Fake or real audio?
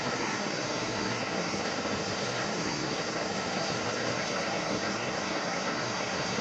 fake